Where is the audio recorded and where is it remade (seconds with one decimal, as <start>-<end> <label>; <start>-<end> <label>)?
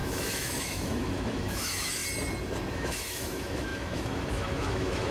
0.0-2.0 remade; 2.0-2.7 recorded; 2.7-5.1 remade